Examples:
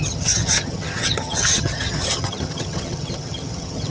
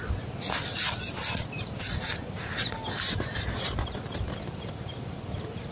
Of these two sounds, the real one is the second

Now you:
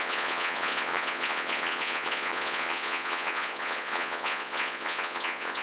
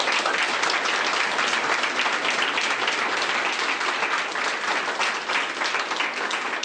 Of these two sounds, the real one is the second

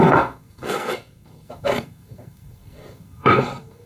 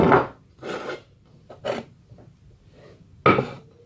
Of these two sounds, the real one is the second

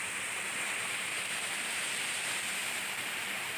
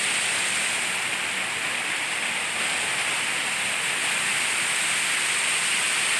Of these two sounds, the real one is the second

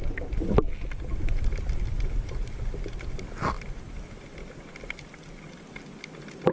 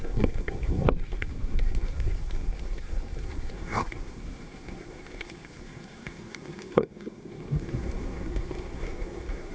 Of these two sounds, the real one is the first